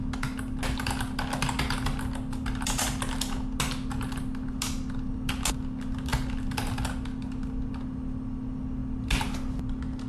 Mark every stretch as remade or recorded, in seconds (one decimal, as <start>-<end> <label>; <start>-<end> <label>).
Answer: 0.0-10.1 recorded